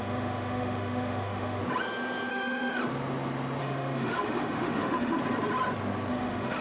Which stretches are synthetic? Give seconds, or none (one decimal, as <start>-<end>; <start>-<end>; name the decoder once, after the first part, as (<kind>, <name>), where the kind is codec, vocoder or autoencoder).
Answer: 0.0-1.6 (autoencoder, DAC-VAE); 2.3-2.8; 3.6-5.2; 6.1-6.6